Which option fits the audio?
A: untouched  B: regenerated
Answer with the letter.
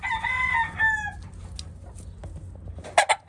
A